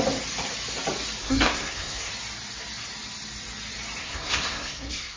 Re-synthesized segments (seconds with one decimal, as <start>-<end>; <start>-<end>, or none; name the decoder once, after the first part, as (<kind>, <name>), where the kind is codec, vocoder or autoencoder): 1.2-2.1 (codec, SNAC); 4.0-5.2